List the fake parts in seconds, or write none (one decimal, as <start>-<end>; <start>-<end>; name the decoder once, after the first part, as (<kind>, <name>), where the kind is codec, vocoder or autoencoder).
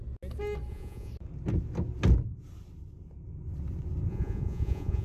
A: 0.7-1.1 (vocoder, Vocos); 4.1-5.0